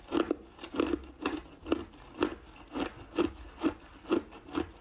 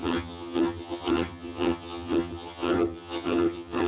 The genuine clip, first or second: first